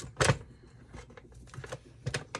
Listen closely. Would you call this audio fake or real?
real